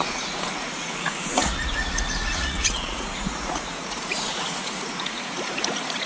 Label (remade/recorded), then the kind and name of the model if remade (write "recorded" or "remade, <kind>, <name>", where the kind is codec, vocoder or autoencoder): remade, vocoder, Vocos